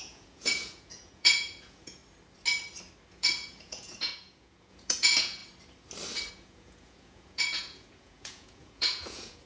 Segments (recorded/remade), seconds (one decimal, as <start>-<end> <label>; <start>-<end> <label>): 0.0-2.0 remade; 2.0-3.1 recorded; 3.1-5.4 remade; 5.4-6.3 recorded; 6.3-9.5 remade